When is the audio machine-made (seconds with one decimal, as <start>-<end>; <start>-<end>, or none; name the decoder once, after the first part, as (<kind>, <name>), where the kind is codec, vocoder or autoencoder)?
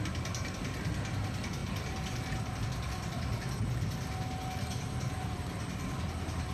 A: none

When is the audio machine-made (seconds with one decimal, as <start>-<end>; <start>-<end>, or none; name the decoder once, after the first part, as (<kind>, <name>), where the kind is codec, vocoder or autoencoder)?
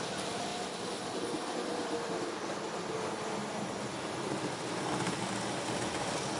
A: none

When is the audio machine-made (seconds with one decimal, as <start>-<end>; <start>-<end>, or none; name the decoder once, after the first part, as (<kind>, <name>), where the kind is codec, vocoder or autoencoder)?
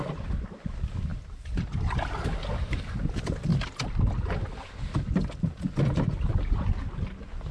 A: none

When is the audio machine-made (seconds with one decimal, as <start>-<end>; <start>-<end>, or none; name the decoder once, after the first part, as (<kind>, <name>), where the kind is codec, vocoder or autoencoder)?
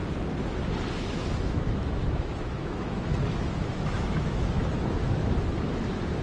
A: 1.0-6.2 (autoencoder, DAC-VAE)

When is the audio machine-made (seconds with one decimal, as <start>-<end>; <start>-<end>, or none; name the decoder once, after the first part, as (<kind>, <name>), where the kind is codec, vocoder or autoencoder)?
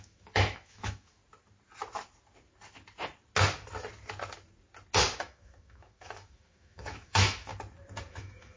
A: 0.0-1.2 (autoencoder, DAC-VAE); 5.2-7.5; 8.1-8.6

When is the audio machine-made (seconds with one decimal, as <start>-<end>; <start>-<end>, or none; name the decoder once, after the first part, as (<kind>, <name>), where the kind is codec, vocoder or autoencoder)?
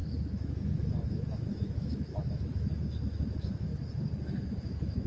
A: 0.0-3.7 (autoencoder, DAC-VAE); 4.4-5.1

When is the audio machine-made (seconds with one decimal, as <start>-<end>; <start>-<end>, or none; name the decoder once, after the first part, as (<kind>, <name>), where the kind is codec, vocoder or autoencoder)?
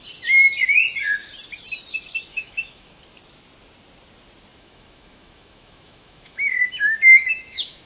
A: 2.3-3.0 (autoencoder, DAC-VAE); 4.5-7.9